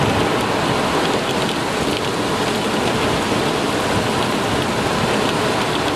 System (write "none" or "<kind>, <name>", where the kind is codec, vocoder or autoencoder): none